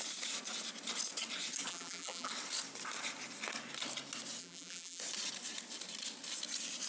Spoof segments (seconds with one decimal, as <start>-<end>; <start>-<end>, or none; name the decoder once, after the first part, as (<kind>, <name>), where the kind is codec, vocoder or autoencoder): 1.7-2.3 (vocoder, BigVGAN v2); 4.4-5.0